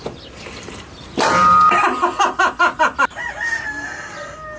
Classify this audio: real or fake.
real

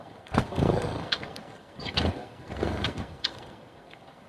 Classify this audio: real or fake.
fake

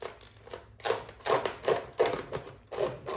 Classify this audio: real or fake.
real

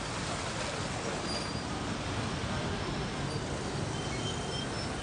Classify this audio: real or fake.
real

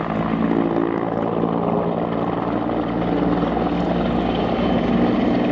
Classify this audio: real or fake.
real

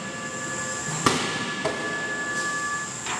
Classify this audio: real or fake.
real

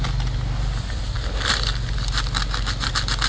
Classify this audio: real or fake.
real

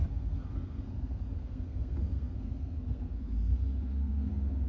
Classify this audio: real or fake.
fake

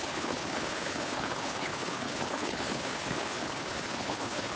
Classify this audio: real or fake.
fake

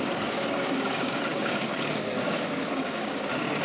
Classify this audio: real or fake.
fake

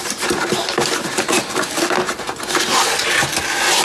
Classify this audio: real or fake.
real